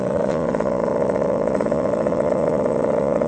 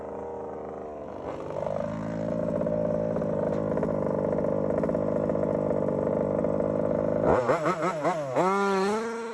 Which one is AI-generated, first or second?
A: first